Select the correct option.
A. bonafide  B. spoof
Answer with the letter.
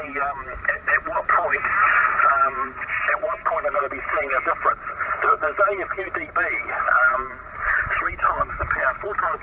A